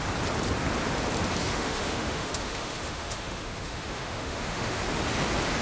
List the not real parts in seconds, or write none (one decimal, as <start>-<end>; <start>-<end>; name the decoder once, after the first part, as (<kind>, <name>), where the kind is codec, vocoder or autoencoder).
1.4-4.8 (autoencoder, DAC-VAE)